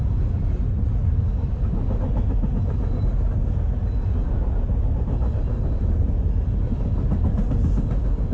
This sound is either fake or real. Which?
real